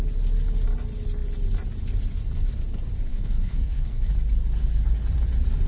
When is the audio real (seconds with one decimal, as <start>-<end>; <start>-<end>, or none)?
0.0-3.1; 4.1-5.7